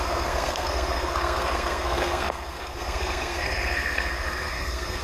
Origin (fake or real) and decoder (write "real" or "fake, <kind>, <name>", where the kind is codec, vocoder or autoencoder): fake, codec, SNAC